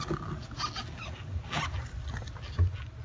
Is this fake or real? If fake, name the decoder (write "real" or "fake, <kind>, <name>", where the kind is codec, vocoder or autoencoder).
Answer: real